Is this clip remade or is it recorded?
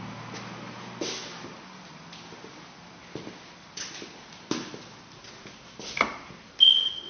recorded